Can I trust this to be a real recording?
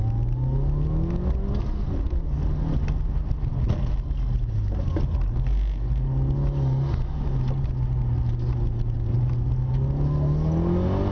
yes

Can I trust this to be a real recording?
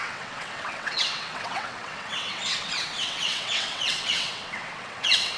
no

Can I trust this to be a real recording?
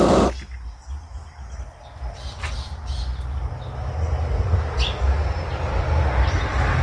yes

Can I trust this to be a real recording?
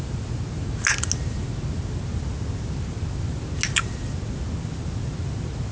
yes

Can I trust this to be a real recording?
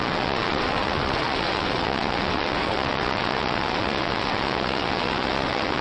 no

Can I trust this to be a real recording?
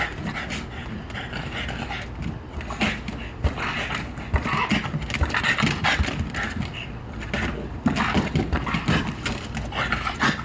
yes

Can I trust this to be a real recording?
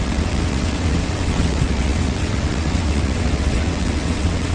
no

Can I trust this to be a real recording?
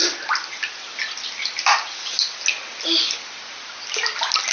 yes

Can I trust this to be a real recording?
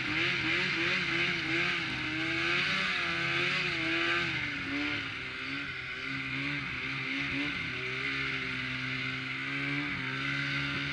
yes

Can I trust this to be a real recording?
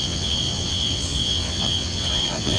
no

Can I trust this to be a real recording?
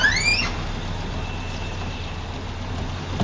yes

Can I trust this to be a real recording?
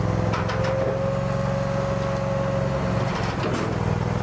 yes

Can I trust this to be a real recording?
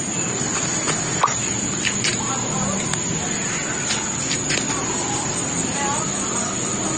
yes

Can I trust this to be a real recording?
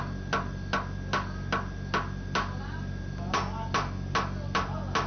yes